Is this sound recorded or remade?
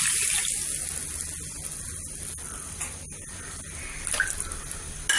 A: recorded